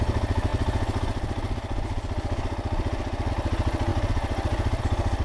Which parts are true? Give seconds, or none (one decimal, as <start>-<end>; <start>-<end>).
0.0-5.2